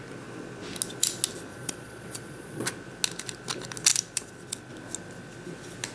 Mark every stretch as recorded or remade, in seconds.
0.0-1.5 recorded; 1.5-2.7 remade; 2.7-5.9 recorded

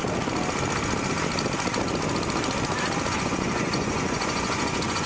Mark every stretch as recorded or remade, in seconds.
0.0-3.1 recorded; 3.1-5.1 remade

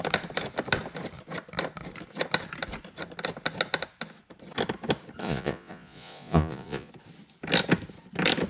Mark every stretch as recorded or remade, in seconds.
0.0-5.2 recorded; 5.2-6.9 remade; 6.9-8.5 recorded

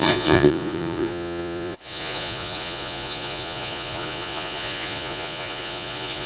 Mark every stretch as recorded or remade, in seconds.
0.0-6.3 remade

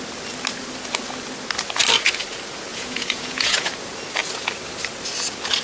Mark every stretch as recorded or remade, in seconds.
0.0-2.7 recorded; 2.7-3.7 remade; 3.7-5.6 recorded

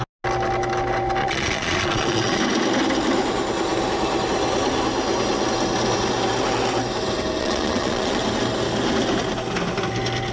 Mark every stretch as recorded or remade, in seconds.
0.0-1.2 recorded; 1.2-2.4 remade; 2.4-7.4 recorded; 7.4-8.2 remade; 8.2-10.3 recorded